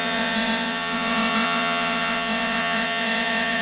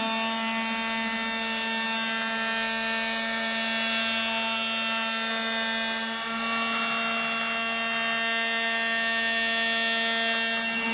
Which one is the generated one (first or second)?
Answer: first